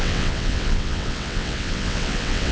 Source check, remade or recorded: remade